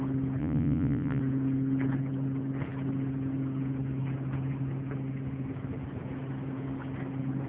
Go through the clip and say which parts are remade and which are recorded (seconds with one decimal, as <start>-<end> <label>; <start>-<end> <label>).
0.0-0.4 recorded; 0.4-1.2 remade; 1.2-7.5 recorded